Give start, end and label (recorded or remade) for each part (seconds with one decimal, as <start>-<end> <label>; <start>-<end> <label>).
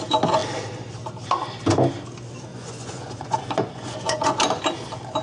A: 0.0-2.5 recorded; 2.5-4.6 remade; 4.6-5.2 recorded